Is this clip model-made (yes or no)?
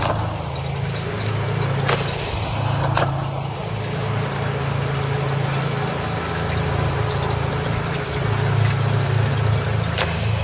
no